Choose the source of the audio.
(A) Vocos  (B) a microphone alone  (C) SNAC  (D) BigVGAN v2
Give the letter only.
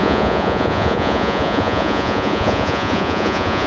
A